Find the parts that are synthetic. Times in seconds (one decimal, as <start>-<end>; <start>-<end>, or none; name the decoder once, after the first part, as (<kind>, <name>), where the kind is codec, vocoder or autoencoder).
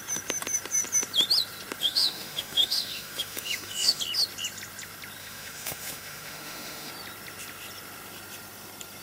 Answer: 1.8-4.0 (autoencoder, DAC-VAE); 5.2-6.9